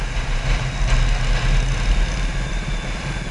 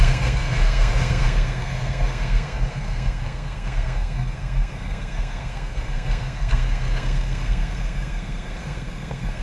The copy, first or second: second